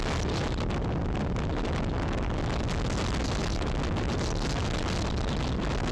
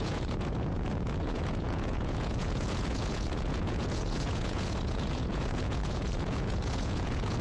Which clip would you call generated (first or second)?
second